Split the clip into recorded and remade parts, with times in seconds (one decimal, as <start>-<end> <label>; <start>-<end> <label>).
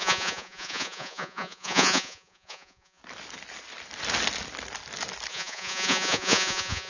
0.0-3.0 remade; 3.0-5.3 recorded; 5.3-6.9 remade